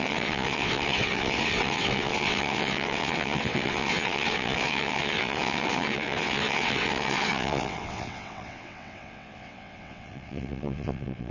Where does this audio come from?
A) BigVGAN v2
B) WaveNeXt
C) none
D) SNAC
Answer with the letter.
B